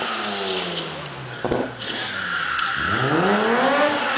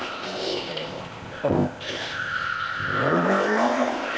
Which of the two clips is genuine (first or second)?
first